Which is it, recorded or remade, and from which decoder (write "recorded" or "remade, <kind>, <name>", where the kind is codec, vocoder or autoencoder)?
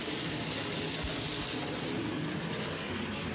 recorded